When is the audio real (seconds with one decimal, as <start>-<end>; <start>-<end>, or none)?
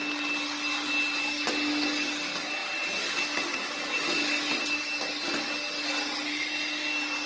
0.0-7.3